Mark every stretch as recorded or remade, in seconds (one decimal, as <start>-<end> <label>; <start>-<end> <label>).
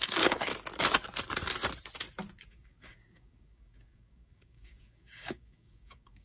0.0-0.5 remade; 0.5-2.5 recorded; 2.5-6.2 remade